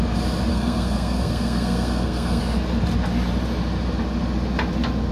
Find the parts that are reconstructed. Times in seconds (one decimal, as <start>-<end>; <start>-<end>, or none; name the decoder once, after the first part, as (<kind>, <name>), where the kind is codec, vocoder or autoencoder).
0.5-2.4 (codec, SNAC)